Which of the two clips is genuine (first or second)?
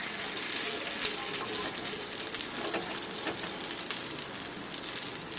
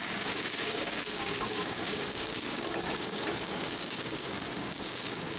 first